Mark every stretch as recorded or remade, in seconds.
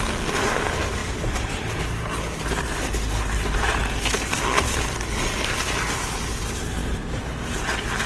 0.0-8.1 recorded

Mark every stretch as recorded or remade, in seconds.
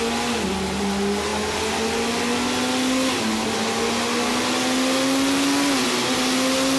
0.0-6.8 recorded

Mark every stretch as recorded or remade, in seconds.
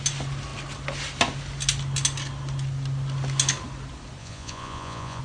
0.0-4.2 recorded; 4.2-5.2 remade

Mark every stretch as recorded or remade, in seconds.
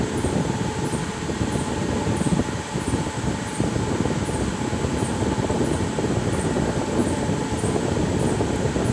0.0-8.9 recorded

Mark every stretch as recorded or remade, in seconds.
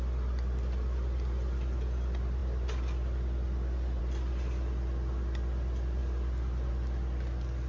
0.0-7.7 recorded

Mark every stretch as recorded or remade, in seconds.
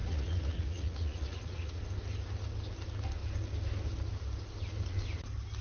0.0-1.8 remade; 1.8-5.6 recorded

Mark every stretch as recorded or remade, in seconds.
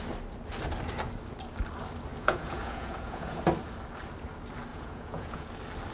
0.0-2.1 recorded; 2.1-3.4 remade; 3.4-4.7 recorded; 4.7-5.5 remade; 5.5-5.9 recorded